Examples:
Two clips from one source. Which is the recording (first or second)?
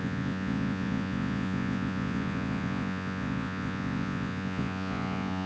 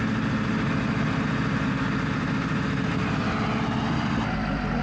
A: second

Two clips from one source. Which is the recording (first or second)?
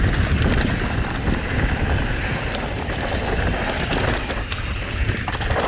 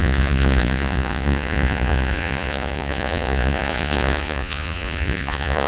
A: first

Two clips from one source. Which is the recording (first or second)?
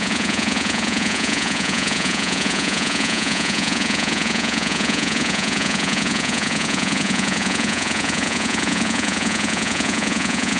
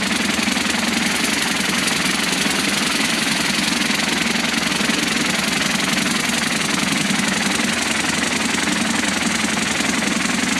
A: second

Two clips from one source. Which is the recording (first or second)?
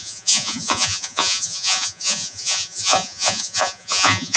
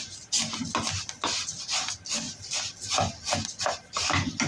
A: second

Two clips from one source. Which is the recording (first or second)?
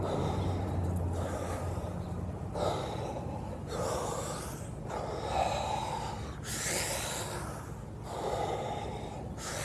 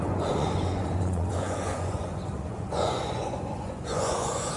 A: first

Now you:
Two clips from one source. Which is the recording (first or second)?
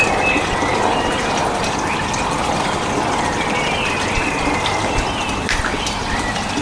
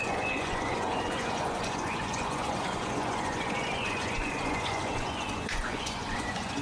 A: first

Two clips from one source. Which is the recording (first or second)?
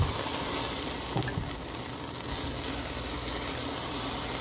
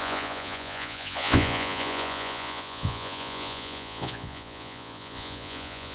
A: first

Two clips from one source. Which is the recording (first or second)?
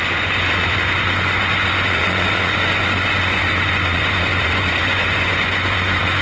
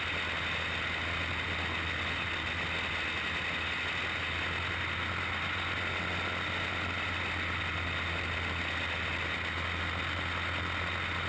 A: second